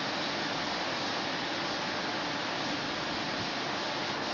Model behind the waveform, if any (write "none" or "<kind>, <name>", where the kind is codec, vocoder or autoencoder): none